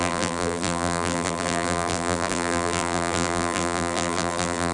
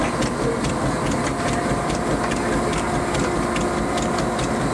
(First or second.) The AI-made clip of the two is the first